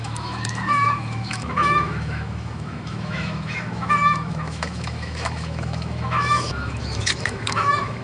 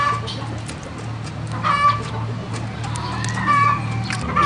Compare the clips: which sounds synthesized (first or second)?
first